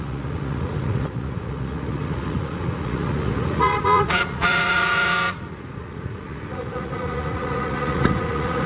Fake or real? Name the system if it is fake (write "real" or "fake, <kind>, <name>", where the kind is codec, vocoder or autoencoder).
fake, vocoder, Vocos